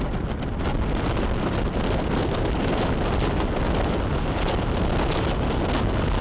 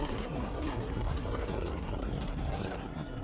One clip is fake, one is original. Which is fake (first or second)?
second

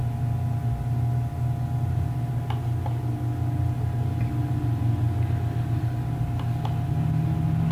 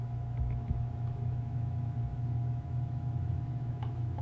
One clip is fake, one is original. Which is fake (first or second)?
second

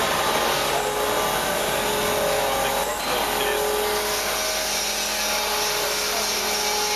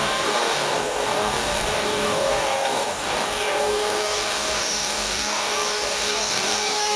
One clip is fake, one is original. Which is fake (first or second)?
second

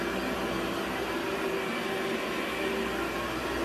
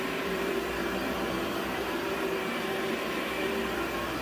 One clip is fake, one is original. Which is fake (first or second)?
second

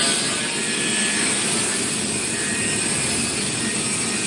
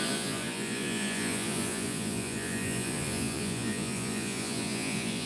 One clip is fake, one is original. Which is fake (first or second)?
second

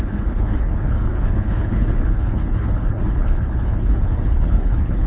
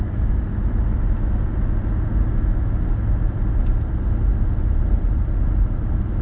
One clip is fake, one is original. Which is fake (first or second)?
first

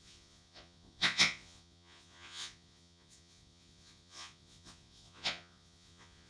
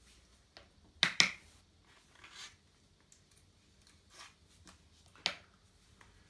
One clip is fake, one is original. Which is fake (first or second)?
first